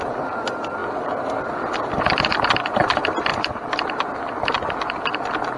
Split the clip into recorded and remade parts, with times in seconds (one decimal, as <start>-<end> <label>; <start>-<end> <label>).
0.0-5.6 recorded